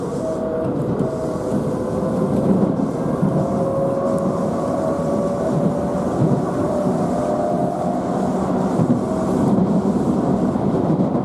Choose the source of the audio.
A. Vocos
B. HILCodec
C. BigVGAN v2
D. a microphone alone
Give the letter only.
D